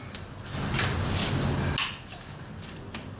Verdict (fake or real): real